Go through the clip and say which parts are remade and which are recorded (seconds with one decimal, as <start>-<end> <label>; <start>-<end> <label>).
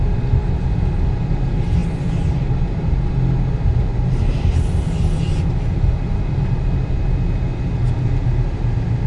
0.0-3.9 recorded; 3.9-4.4 remade; 4.4-9.1 recorded